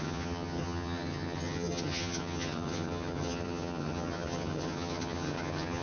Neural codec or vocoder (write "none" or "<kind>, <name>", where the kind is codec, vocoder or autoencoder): vocoder, HiFi-GAN